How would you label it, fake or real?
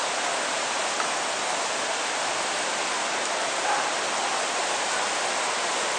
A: real